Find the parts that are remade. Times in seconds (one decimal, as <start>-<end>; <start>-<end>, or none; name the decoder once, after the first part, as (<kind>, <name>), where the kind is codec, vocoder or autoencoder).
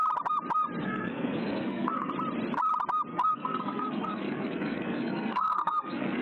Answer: 0.8-2.1 (codec, SNAC); 3.1-6.2